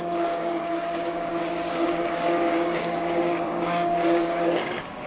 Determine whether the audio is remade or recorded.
remade